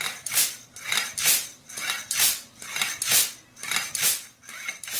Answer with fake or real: real